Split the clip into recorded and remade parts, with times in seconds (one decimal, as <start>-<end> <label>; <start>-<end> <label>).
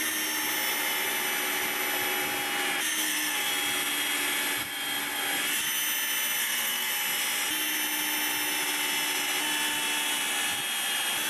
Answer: 0.0-3.0 recorded; 3.0-3.5 remade; 3.5-6.4 recorded; 6.4-6.9 remade; 6.9-11.3 recorded